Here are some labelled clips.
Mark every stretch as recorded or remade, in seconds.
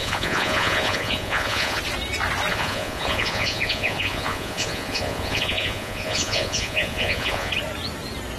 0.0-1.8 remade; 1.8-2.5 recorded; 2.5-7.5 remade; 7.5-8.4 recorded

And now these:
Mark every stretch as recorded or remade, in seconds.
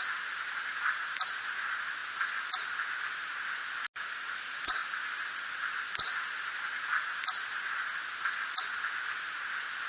0.0-9.9 recorded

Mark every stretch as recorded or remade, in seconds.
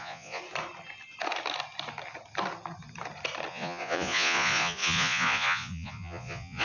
0.0-0.4 remade; 0.4-3.5 recorded; 3.5-6.6 remade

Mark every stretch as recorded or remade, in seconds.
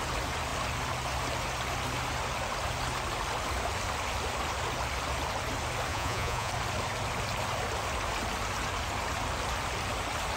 0.0-5.9 recorded; 5.9-6.5 remade; 6.5-10.4 recorded